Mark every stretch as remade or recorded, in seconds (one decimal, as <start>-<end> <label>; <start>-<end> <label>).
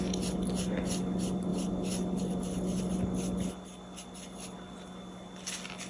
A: 0.0-5.9 recorded